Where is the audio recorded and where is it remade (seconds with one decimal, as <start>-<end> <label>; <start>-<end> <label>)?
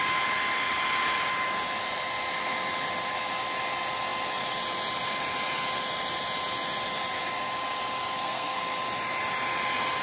0.0-8.0 recorded; 8.0-8.6 remade; 8.6-10.0 recorded